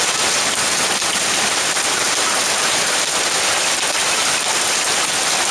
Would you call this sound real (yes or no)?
yes